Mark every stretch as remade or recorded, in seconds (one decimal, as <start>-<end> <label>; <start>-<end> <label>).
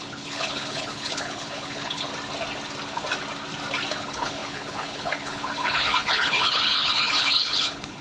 0.0-2.1 remade; 2.1-3.9 recorded; 3.9-8.0 remade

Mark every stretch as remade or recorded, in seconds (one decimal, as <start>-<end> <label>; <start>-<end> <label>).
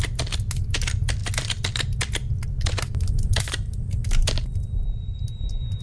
0.0-5.8 recorded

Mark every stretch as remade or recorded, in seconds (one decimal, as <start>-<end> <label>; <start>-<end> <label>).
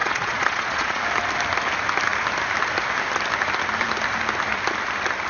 0.0-1.0 remade; 1.0-5.3 recorded